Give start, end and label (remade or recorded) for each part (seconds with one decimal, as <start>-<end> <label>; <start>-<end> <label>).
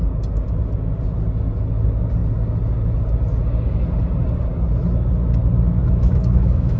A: 0.0-5.8 recorded; 5.8-6.8 remade